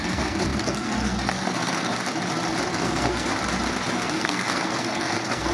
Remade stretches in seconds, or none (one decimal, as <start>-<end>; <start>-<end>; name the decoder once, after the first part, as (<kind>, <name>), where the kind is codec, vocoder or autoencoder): 0.0-1.9 (codec, SNAC); 2.7-3.3; 3.9-5.5